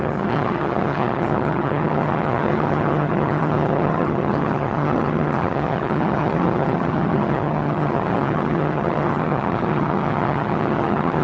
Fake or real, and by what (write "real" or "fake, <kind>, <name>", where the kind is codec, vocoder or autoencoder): fake, vocoder, HiFi-GAN